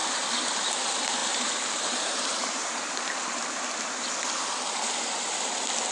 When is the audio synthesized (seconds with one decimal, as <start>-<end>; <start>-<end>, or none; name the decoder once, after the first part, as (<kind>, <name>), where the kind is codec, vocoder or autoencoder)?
1.2-3.4 (vocoder, BigVGAN v2)